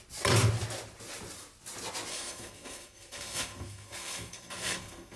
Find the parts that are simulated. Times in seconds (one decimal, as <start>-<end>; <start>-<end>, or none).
2.1-5.2